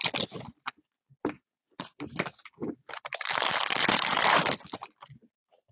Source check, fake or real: fake